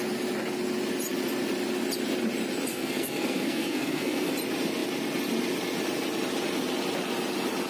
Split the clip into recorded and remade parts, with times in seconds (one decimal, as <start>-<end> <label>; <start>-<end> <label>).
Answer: 0.0-2.7 recorded; 2.7-4.3 remade; 4.3-7.7 recorded